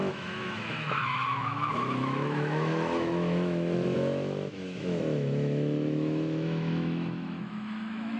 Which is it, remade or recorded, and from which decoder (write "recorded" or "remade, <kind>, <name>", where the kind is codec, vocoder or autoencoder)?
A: remade, autoencoder, DAC-VAE